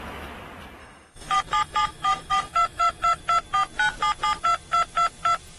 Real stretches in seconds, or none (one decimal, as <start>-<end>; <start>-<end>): 0.0-0.8; 3.2-5.6